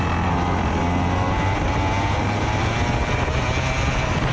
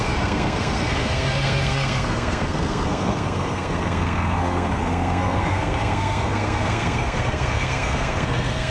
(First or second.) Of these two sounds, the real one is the first